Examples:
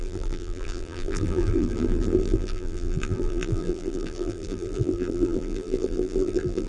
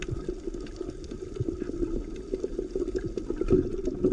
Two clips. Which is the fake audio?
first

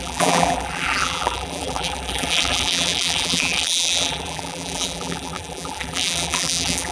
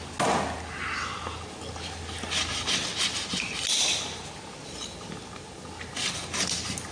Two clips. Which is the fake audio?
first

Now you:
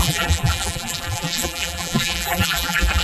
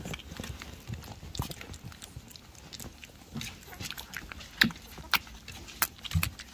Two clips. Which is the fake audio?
first